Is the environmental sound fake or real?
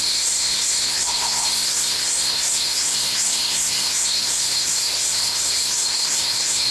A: fake